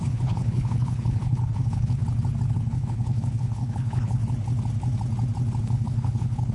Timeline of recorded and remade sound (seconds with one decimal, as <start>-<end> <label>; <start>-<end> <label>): 0.0-2.0 remade; 2.0-2.5 recorded; 2.5-4.2 remade; 4.2-5.6 recorded; 5.6-6.5 remade